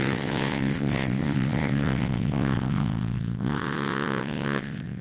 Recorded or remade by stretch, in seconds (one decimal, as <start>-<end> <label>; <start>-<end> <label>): 0.0-5.0 remade